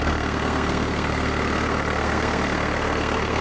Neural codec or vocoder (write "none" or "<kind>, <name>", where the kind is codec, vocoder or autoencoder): codec, SNAC